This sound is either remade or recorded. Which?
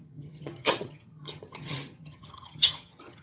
remade